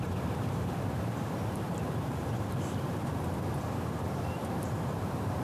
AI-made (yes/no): yes